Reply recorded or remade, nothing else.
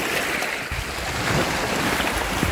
recorded